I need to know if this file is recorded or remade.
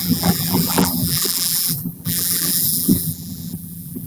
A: remade